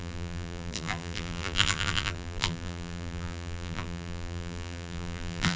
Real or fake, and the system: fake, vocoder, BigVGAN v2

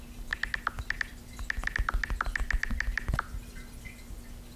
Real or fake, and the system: real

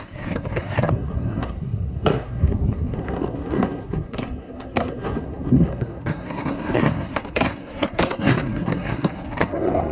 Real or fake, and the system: fake, codec, SNAC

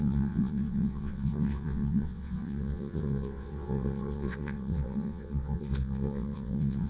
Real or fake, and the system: fake, vocoder, WaveNeXt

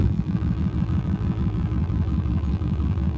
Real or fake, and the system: fake, vocoder, BigVGAN v2